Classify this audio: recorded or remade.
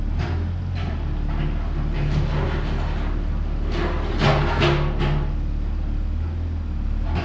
recorded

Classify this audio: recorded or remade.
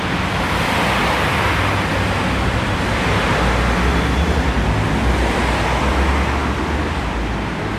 recorded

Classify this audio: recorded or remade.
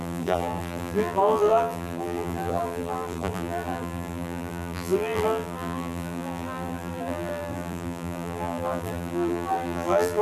remade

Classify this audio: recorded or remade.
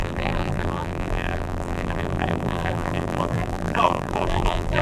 remade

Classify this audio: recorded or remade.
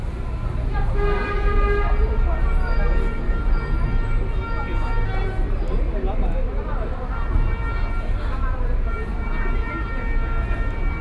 recorded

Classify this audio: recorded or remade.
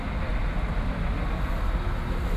recorded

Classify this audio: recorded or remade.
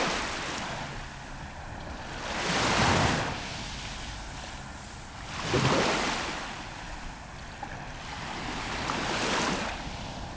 recorded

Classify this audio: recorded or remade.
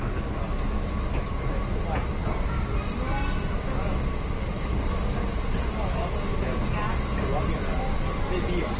recorded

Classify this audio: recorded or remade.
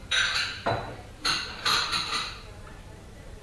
remade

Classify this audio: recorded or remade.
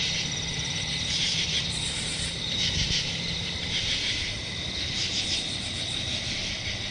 remade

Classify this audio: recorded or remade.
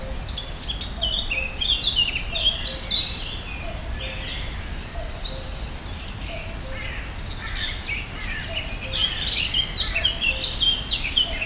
recorded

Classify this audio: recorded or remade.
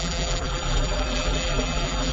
remade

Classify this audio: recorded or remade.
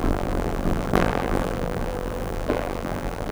remade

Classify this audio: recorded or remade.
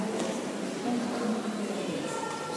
recorded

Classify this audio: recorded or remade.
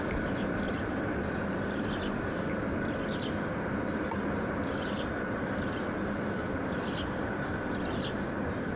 recorded